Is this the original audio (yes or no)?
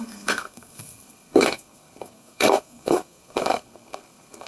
no